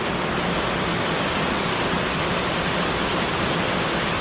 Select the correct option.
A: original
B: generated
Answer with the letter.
A